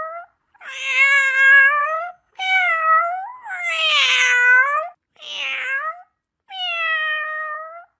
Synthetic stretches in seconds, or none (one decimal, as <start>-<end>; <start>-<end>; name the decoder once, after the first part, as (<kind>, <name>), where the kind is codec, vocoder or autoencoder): 1.8-2.7 (codec, SNAC)

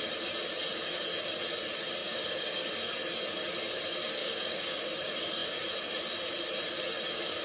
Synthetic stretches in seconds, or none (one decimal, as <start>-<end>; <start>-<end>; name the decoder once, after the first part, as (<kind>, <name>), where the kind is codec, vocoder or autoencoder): 2.0-2.7 (codec, DAC); 4.2-4.8

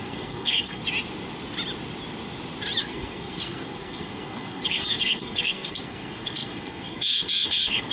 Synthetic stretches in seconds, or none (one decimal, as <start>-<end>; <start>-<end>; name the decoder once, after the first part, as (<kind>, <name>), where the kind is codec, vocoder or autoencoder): 0.0-0.8 (codec, SNAC); 2.8-7.9

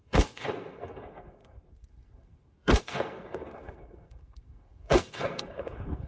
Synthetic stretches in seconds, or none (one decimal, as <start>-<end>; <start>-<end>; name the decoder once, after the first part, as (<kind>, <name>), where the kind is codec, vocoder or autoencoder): 0.0-6.1 (codec, SNAC)

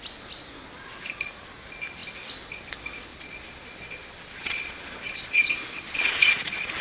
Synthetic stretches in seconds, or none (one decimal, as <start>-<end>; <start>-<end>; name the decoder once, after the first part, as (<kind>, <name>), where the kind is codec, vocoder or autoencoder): 3.1-6.8 (vocoder, Vocos)

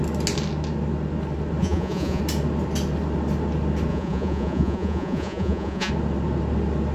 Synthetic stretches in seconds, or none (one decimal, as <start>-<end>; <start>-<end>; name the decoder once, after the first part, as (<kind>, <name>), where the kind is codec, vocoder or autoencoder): 1.6-2.2 (vocoder, Vocos); 3.9-5.9